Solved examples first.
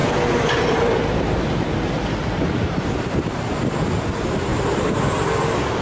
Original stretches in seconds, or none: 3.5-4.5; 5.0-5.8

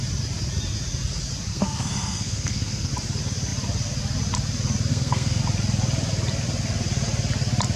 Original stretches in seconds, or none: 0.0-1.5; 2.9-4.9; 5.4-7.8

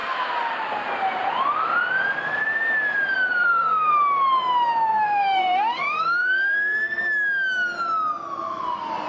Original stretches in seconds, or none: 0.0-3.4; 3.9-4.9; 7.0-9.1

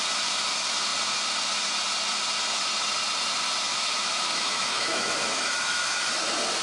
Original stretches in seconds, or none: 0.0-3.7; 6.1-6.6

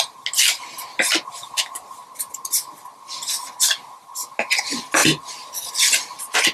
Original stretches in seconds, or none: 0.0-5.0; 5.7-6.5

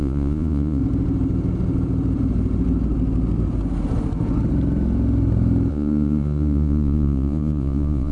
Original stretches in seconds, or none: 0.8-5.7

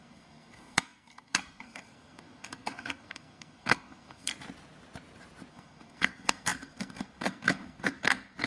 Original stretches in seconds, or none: 4.3-5.5